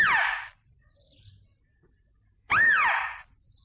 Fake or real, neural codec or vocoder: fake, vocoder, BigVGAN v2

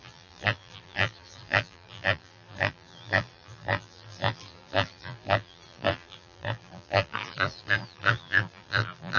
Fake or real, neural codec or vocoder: fake, vocoder, BigVGAN v2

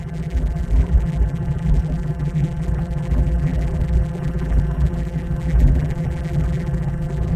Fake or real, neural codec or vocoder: fake, vocoder, BigVGAN v2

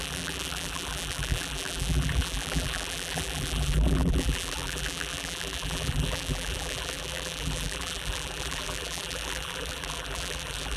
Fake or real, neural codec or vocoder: fake, vocoder, BigVGAN v2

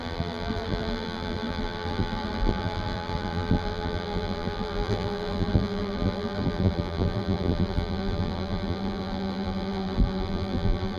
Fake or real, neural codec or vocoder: fake, vocoder, BigVGAN v2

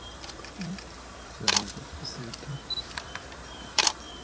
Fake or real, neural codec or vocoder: fake, vocoder, BigVGAN v2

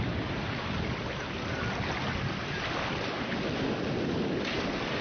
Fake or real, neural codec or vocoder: real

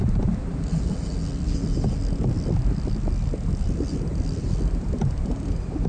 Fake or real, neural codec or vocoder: fake, vocoder, BigVGAN v2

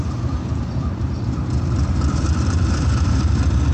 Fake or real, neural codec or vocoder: fake, vocoder, BigVGAN v2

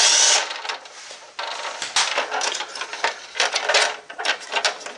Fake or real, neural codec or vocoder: real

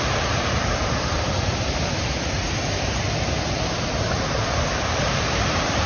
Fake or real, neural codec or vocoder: fake, vocoder, BigVGAN v2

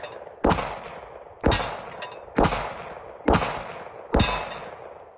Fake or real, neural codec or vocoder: real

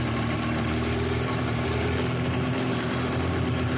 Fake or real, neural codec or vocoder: fake, vocoder, BigVGAN v2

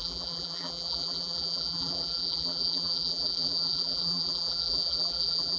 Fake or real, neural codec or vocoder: fake, vocoder, BigVGAN v2